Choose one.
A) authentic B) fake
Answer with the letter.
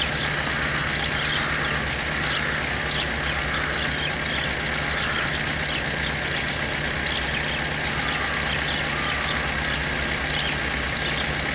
A